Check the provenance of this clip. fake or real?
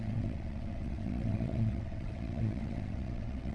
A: fake